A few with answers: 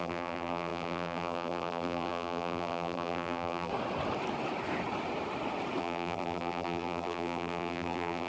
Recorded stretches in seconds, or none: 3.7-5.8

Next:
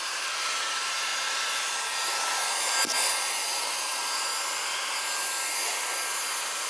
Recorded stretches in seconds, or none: 1.1-3.6; 4.3-6.7